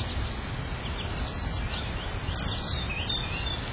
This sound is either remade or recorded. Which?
recorded